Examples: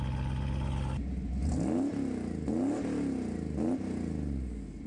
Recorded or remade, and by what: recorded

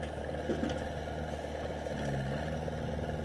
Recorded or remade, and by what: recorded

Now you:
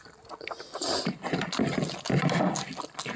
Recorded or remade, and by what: recorded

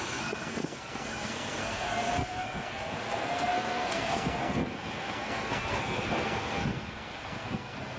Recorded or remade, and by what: remade, codec, SNAC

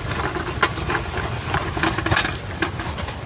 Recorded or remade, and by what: recorded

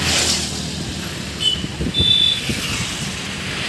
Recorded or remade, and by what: recorded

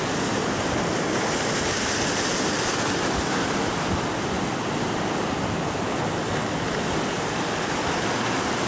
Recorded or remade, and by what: recorded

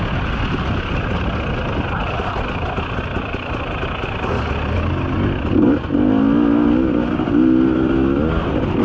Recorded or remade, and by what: recorded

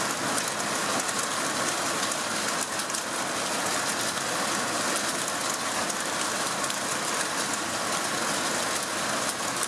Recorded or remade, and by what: recorded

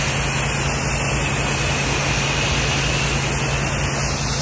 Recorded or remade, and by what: recorded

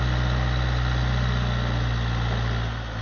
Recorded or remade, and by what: recorded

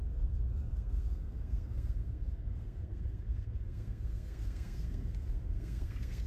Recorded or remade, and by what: remade, codec, SNAC